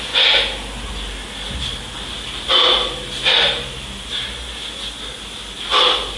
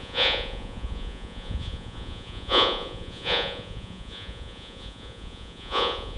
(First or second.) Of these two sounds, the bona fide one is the first